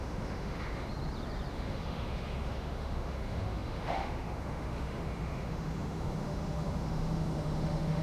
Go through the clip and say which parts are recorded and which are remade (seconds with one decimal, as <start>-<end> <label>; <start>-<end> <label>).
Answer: 0.0-0.9 remade; 0.9-1.5 recorded; 1.5-8.0 remade